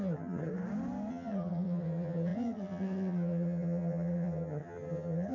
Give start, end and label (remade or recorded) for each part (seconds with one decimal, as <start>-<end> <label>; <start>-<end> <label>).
0.0-0.5 remade; 0.5-1.1 recorded; 1.1-5.3 remade